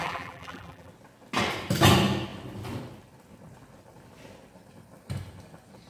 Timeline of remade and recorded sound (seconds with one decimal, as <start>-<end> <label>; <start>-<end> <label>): 0.0-0.9 remade; 0.9-5.9 recorded